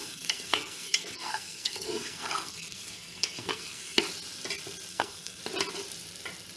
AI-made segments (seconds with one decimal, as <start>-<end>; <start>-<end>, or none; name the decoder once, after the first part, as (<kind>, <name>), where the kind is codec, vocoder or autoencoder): 0.0-4.0 (codec, SNAC); 4.9-5.4